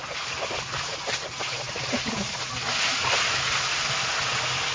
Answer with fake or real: real